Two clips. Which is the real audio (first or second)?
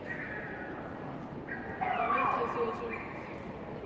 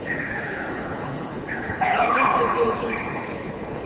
first